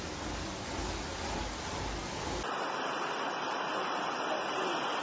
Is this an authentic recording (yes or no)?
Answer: yes